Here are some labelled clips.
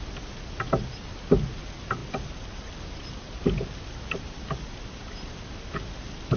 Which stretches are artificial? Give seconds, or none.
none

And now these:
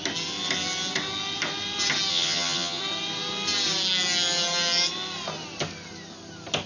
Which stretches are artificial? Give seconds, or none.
2.1-2.8 (vocoder, HiFi-GAN)

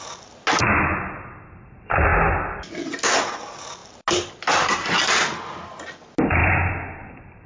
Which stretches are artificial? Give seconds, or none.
none

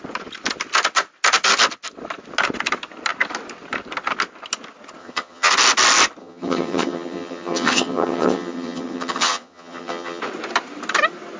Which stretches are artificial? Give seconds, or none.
5.0-5.5 (vocoder, HiFi-GAN); 6.2-10.2